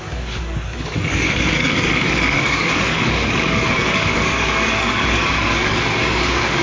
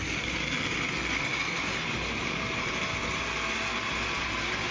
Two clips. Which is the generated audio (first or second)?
first